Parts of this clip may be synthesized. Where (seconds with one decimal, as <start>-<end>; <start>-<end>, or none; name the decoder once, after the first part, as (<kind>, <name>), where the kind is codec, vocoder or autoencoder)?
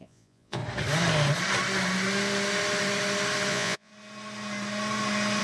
0.0-0.6 (vocoder, Vocos); 3.5-3.9